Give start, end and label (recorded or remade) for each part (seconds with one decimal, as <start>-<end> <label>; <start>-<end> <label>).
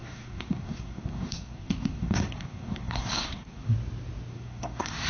0.0-3.7 remade; 3.7-4.3 recorded; 4.3-5.1 remade